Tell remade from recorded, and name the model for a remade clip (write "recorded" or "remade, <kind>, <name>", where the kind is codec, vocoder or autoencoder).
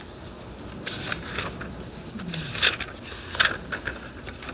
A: recorded